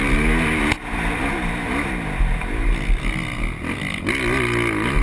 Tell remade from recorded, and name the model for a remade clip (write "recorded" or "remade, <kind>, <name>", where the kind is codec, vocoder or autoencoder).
recorded